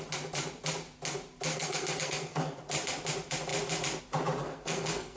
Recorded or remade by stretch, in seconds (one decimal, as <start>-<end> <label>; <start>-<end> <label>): 0.0-1.5 recorded; 1.5-2.6 remade; 2.6-4.4 recorded; 4.4-5.2 remade